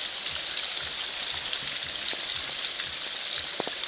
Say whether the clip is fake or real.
real